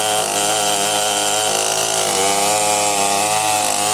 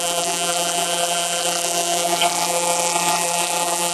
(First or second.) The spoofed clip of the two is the second